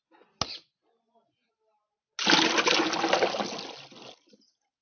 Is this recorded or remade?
recorded